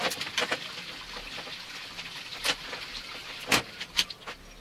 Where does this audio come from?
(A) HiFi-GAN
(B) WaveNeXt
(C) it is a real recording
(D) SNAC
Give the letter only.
C